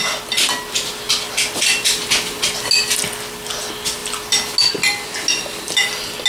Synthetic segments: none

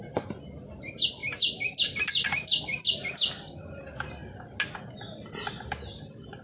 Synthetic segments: none

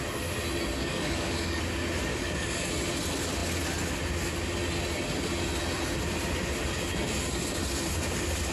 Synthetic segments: 0.8-1.6 (codec, DAC); 2.1-2.7